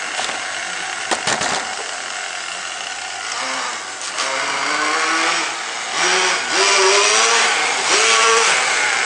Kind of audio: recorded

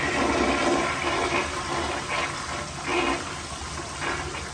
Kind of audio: recorded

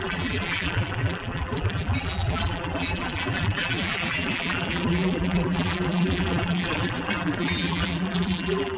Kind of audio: remade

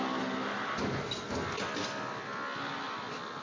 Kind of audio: recorded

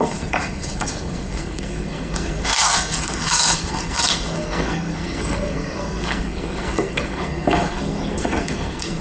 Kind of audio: remade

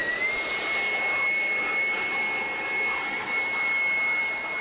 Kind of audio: recorded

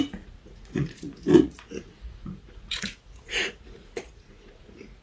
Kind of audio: remade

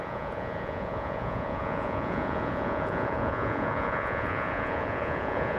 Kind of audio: remade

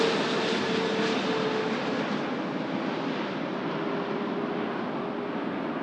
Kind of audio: recorded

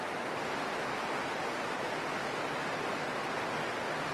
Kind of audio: recorded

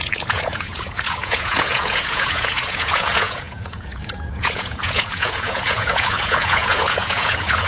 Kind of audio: remade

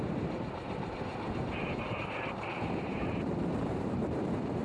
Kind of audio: remade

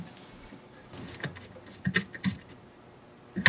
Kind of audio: recorded